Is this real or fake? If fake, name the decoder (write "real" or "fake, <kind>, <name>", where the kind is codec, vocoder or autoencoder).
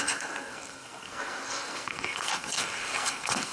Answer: fake, codec, SNAC